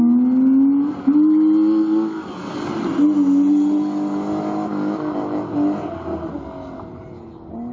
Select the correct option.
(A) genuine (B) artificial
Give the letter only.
A